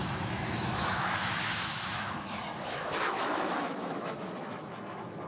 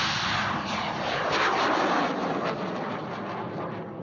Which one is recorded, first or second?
second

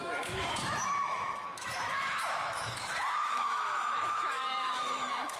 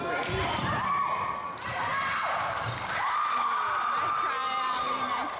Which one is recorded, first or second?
second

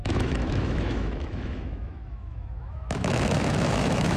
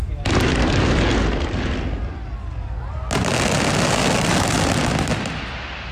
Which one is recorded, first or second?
second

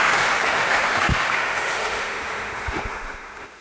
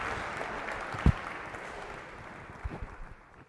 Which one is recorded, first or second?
second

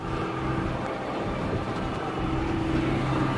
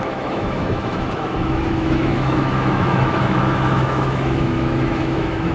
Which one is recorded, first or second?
first